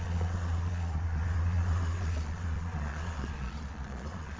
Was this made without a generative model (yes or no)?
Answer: no